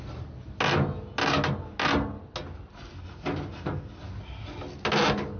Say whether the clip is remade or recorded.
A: recorded